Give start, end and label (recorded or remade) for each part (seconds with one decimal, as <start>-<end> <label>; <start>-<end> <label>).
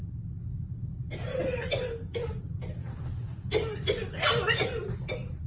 0.0-5.5 recorded